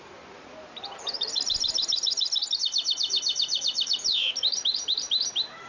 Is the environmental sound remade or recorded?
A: remade